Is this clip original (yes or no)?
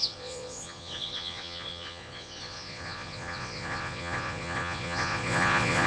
no